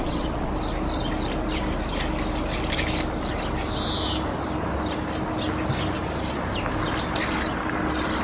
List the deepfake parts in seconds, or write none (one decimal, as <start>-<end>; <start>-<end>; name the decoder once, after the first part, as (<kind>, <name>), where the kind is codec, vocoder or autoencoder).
0.0-0.5 (vocoder, WaveNeXt)